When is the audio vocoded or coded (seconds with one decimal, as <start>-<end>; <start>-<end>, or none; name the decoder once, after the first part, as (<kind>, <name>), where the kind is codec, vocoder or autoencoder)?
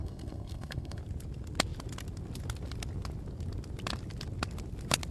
0.0-1.0 (codec, SNAC)